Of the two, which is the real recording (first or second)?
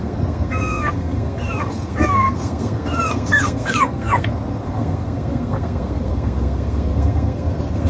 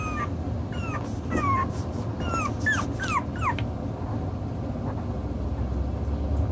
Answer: second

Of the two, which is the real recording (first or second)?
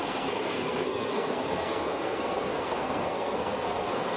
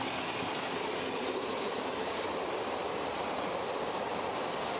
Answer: second